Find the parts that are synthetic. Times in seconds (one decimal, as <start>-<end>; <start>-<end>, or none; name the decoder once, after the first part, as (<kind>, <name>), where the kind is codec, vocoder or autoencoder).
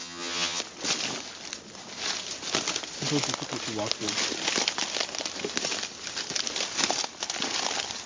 0.0-0.6 (vocoder, HiFi-GAN)